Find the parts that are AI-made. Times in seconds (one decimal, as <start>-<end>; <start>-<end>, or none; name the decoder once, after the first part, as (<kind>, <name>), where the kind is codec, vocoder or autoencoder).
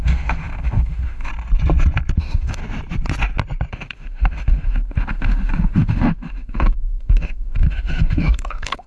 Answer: 0.0-1.3 (autoencoder, DAC-VAE); 2.2-2.6; 3.7-8.9